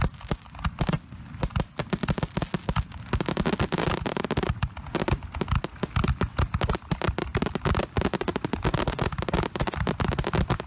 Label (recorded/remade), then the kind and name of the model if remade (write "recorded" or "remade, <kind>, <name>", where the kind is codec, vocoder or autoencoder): recorded